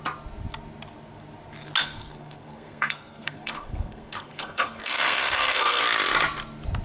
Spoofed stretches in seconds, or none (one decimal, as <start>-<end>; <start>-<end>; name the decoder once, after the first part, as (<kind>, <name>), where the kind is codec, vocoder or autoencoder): 1.8-5.8 (codec, SNAC)